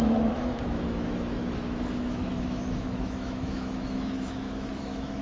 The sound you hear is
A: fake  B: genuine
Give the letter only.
A